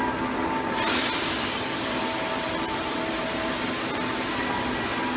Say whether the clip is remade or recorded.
recorded